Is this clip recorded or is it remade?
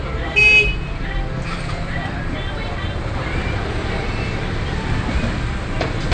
remade